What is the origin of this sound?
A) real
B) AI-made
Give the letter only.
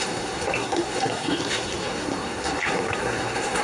B